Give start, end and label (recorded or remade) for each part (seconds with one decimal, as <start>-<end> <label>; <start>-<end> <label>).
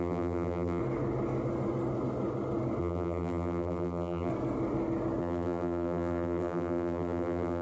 0.0-0.8 remade; 0.8-2.8 recorded; 2.8-4.3 remade; 4.3-5.2 recorded; 5.2-7.6 remade